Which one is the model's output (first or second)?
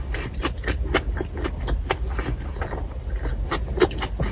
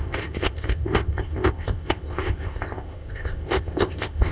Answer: second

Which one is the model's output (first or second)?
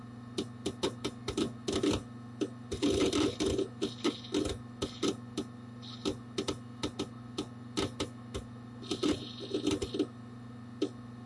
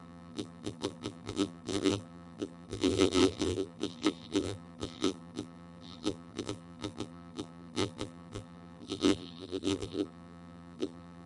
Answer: second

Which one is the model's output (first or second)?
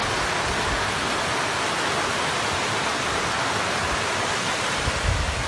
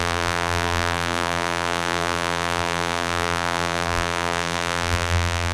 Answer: second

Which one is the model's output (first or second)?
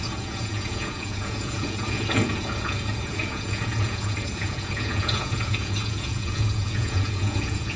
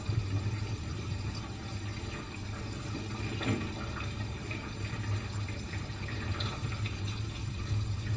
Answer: first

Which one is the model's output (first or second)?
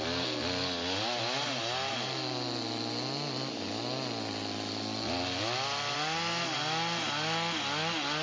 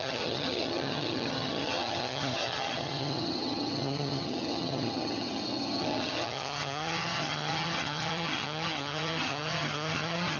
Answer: second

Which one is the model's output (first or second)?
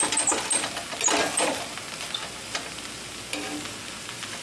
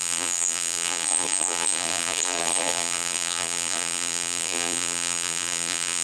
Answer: second